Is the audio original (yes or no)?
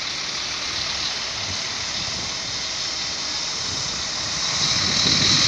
yes